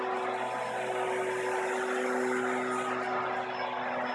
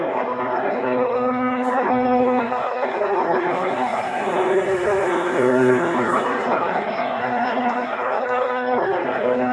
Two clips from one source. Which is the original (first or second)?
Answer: first